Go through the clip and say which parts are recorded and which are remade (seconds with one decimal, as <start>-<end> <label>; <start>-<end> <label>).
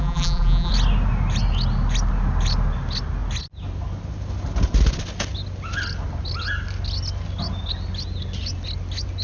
0.0-0.7 remade; 0.7-9.2 recorded